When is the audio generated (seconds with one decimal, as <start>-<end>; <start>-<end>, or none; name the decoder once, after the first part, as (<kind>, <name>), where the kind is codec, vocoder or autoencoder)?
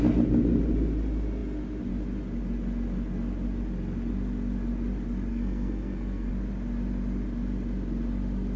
5.3-6.3 (codec, SNAC)